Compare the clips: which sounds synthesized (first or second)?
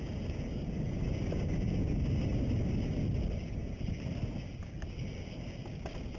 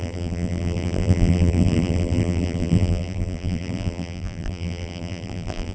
second